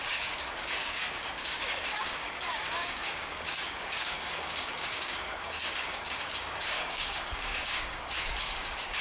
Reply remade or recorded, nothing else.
remade